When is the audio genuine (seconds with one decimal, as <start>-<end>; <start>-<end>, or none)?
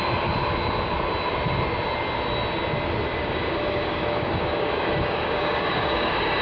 0.0-3.2